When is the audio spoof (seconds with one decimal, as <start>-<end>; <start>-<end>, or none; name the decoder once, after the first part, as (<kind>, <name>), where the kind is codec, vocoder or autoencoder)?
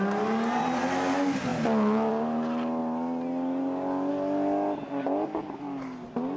none